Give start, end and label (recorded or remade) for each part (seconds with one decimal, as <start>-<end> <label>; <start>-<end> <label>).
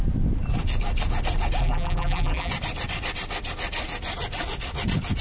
0.0-1.6 recorded; 1.6-2.5 remade; 2.5-5.2 recorded